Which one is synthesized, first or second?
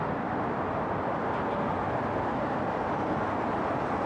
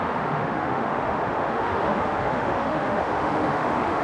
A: second